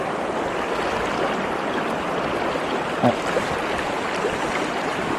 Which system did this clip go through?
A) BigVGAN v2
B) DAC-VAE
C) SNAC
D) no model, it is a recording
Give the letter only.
A